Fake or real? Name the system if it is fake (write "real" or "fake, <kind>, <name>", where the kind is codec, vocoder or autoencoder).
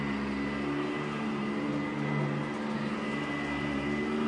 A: real